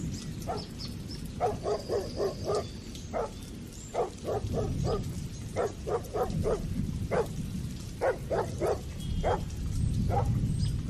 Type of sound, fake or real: real